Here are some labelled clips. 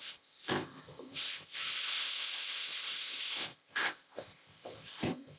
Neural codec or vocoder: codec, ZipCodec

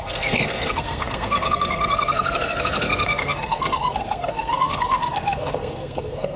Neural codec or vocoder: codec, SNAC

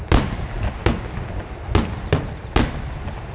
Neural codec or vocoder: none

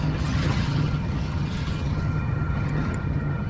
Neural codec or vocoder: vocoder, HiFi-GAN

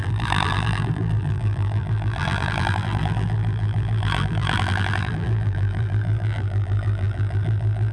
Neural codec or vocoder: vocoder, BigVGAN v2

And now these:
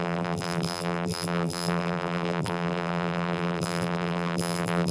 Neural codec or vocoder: vocoder, BigVGAN v2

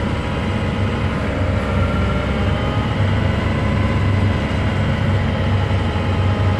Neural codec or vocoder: none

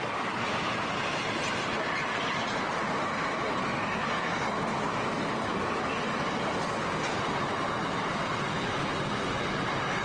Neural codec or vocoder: none